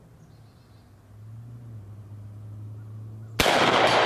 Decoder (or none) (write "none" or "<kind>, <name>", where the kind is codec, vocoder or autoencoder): none